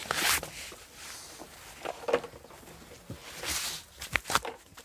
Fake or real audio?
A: real